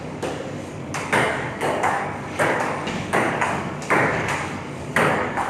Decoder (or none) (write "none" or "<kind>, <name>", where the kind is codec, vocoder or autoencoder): codec, DAC